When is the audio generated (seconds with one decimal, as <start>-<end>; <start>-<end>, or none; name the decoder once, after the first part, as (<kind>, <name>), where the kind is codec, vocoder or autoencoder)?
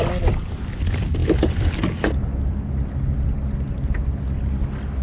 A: none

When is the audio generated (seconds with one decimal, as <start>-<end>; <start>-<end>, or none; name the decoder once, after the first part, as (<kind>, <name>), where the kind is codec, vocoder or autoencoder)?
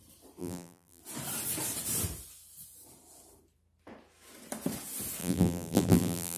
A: 0.4-1.0 (vocoder, BigVGAN v2); 5.2-6.4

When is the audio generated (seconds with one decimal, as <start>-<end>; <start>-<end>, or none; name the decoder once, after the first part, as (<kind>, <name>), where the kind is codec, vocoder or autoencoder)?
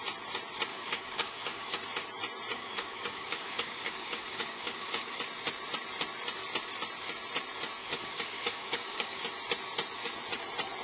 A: 0.7-1.8 (codec, DAC); 2.5-5.2; 7.8-9.2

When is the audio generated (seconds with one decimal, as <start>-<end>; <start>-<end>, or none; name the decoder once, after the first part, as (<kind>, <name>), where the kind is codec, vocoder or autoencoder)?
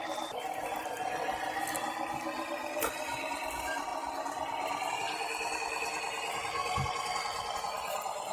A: none